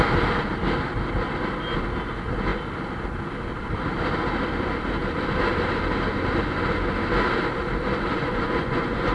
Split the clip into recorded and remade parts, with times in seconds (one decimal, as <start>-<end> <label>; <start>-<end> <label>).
0.0-8.1 recorded; 8.1-9.1 remade